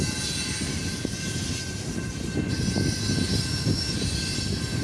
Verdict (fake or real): real